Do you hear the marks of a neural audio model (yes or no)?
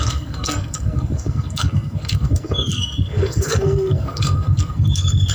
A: yes